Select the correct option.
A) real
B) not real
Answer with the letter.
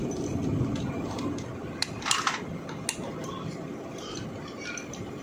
A